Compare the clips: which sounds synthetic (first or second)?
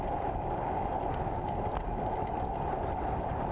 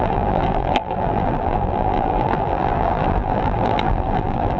second